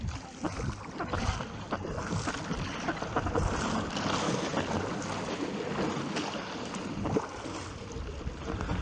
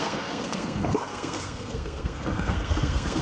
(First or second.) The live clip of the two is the first